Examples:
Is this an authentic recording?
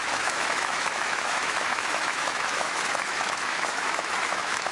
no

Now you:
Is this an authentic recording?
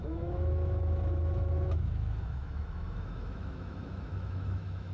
no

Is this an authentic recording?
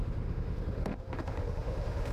no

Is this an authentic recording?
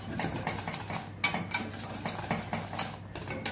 yes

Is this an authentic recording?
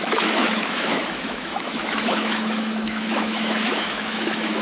no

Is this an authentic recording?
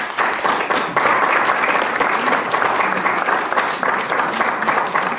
yes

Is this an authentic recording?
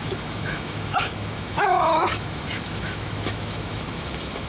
no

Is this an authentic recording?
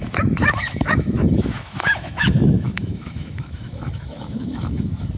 no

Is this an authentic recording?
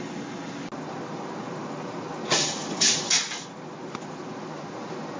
yes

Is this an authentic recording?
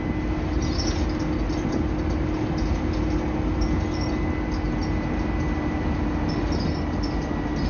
yes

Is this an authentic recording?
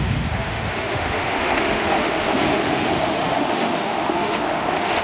no